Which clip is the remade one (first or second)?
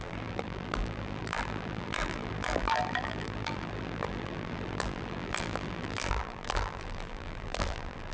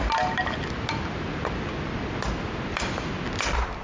first